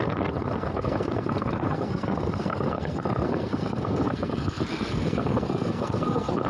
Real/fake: fake